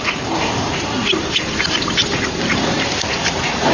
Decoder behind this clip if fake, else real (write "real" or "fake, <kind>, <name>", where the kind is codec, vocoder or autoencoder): fake, vocoder, BigVGAN v2